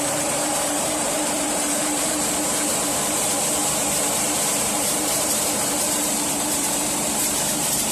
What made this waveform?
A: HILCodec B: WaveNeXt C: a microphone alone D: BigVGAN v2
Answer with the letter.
D